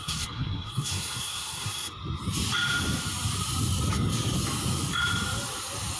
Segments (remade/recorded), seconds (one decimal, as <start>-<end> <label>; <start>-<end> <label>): 0.0-1.9 remade; 1.9-6.0 recorded